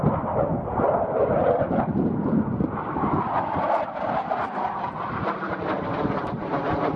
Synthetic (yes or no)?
yes